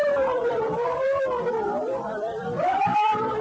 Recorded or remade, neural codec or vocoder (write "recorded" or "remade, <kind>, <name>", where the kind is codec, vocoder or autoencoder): remade, vocoder, BigVGAN v2